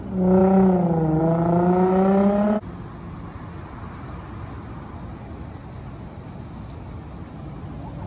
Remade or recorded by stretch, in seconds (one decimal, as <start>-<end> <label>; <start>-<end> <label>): 0.0-8.1 recorded